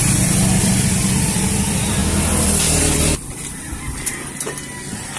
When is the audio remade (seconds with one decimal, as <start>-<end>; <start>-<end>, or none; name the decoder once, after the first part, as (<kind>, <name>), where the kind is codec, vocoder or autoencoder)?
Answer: 0.0-2.0 (vocoder, BigVGAN v2)